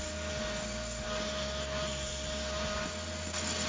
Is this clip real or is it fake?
real